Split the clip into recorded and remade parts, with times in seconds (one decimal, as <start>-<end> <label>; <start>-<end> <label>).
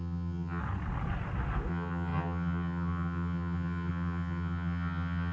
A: 0.0-0.6 remade; 0.6-1.7 recorded; 1.7-5.3 remade